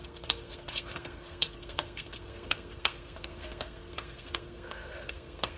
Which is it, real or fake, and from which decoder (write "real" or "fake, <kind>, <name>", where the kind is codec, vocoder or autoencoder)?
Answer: fake, codec, SNAC